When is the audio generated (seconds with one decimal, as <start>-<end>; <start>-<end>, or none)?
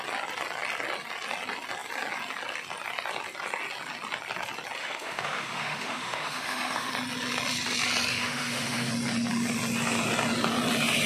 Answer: 4.8-6.9; 8.1-8.9